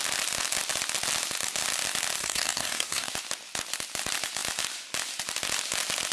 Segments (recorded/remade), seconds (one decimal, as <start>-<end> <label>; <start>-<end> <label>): 0.0-2.2 recorded; 2.2-3.1 remade; 3.1-6.1 recorded